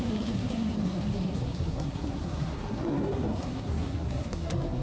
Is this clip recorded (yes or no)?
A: no